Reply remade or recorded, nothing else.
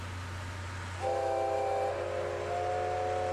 recorded